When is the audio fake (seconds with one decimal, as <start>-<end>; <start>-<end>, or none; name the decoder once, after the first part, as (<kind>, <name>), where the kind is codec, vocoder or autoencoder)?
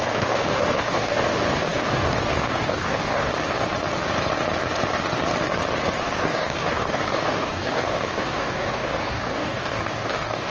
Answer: 0.0-3.3 (codec, DAC); 6.0-10.5